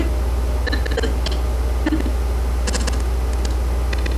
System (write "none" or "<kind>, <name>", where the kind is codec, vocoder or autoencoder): none